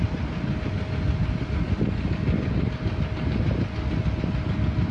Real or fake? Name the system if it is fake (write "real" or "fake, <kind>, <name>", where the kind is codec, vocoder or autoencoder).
real